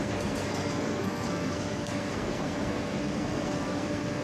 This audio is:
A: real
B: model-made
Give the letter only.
B